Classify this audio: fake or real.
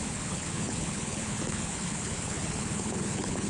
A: fake